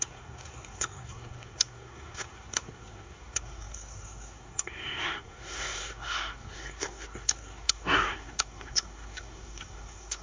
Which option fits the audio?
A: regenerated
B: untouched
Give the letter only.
A